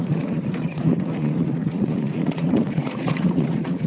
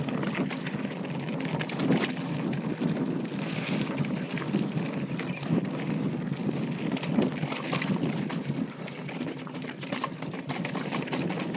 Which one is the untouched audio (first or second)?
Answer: second